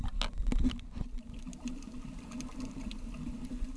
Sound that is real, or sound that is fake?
real